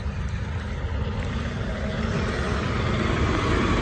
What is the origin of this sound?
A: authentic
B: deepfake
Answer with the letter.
A